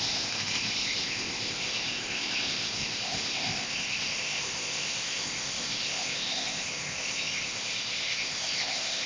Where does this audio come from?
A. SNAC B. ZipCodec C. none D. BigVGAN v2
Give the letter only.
B